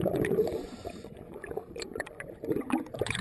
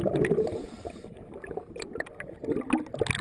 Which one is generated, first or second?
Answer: first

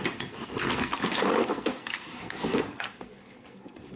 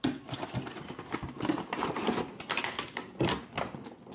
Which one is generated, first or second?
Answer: first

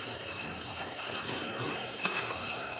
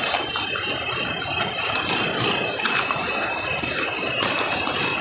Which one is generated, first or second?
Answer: first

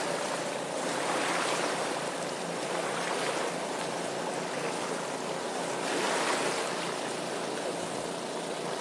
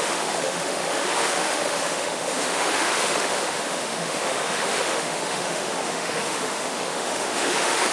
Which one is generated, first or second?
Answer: second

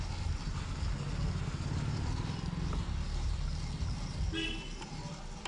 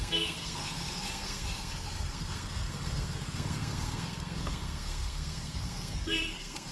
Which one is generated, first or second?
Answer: second